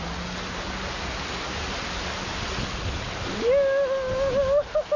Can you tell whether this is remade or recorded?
recorded